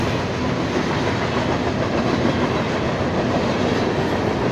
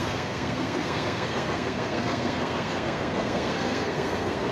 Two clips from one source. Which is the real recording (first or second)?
first